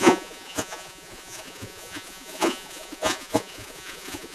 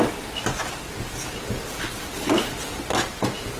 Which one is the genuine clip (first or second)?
second